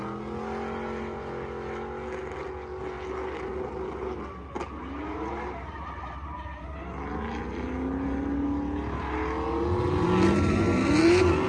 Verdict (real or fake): real